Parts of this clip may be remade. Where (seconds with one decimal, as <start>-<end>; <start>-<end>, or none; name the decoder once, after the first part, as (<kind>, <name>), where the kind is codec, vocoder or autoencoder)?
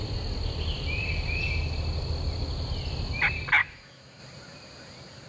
3.6-4.2 (autoencoder, DAC-VAE)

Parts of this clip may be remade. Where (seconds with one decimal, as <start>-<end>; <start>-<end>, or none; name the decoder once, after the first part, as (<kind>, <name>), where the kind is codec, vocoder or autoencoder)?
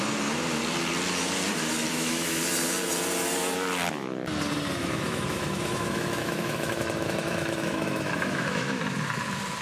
1.9-2.4 (autoencoder, DAC-VAE); 4.8-8.8